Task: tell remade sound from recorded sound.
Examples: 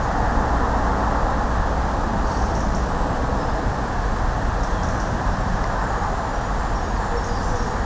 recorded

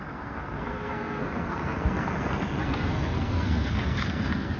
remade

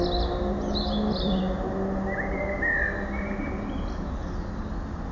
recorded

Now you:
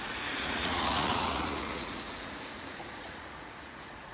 remade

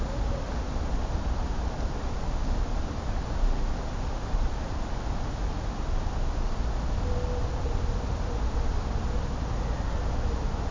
recorded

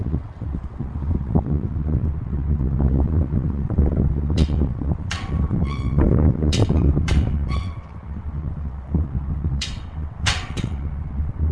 remade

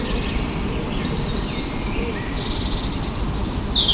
recorded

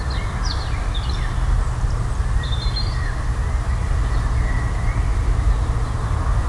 recorded